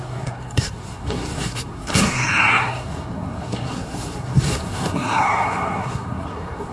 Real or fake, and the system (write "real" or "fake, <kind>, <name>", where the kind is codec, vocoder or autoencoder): fake, codec, SNAC